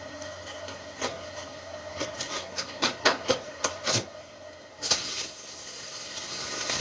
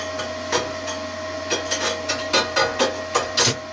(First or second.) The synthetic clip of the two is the first